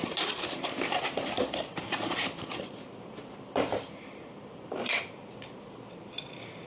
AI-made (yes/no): yes